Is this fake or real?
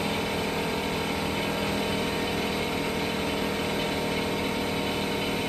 real